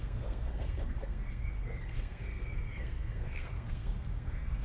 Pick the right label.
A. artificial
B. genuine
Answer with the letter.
A